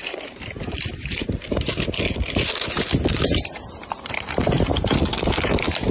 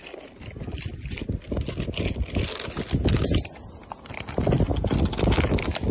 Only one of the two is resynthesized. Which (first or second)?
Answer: first